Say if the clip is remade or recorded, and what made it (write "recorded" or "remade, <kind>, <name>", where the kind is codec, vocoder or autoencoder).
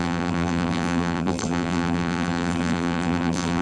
remade, vocoder, BigVGAN v2